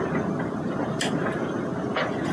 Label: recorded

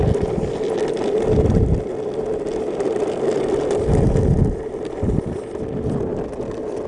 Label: recorded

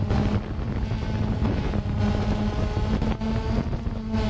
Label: recorded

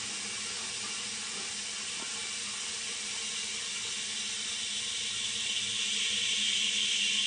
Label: recorded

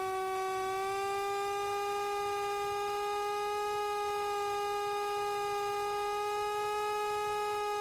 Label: remade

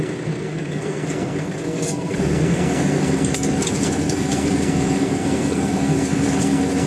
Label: remade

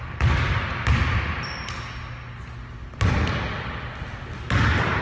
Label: recorded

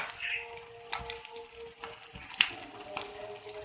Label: recorded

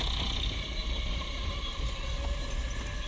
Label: recorded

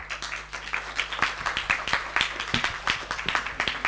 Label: recorded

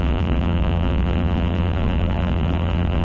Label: remade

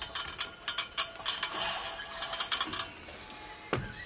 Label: recorded